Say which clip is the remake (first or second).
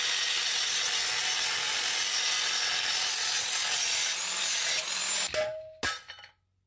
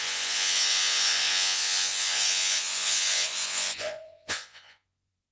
second